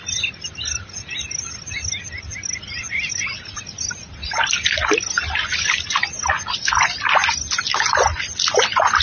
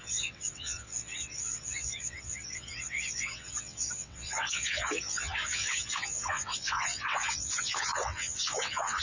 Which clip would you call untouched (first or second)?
first